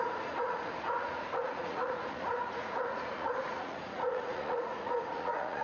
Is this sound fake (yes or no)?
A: yes